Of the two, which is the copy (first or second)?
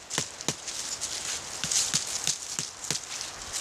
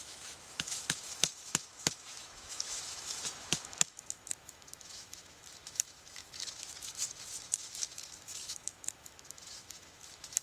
second